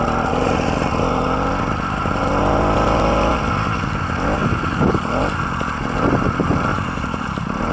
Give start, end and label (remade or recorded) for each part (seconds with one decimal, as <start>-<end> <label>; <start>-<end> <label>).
0.0-6.7 recorded; 6.7-7.7 remade

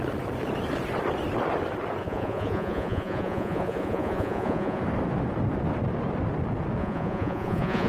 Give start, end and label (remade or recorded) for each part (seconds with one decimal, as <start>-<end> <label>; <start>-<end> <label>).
0.0-2.0 recorded; 2.0-4.8 remade; 4.8-6.8 recorded; 6.8-7.9 remade

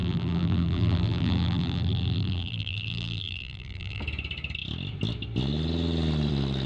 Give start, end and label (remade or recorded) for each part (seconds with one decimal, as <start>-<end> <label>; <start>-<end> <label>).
0.0-4.0 remade; 4.0-6.7 recorded

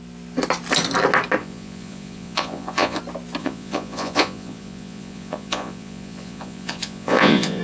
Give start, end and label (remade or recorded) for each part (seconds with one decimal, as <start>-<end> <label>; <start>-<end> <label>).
0.0-1.4 recorded; 1.4-3.0 remade; 3.0-3.4 recorded; 3.4-7.6 remade

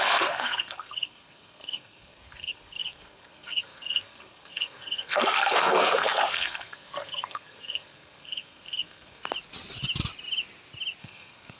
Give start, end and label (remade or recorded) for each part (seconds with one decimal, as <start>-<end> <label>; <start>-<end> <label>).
0.0-9.2 remade; 9.2-11.0 recorded; 11.0-11.6 remade

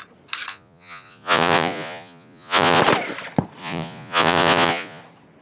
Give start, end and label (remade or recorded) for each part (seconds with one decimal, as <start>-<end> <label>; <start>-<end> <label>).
0.0-0.5 recorded; 0.5-2.8 remade; 2.8-3.6 recorded; 3.6-5.0 remade; 5.0-5.4 recorded

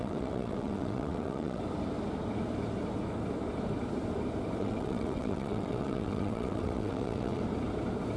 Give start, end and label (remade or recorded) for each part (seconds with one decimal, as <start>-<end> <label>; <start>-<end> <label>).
0.0-1.6 remade; 1.6-4.6 recorded; 4.6-7.4 remade; 7.4-8.2 recorded

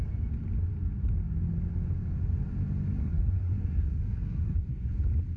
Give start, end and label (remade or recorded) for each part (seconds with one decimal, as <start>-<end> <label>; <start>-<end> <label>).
0.0-3.0 recorded; 3.0-4.9 remade; 4.9-5.4 recorded